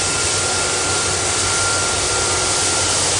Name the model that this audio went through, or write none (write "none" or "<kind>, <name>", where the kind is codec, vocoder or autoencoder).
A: none